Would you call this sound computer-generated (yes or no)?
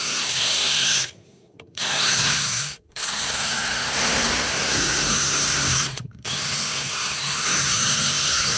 yes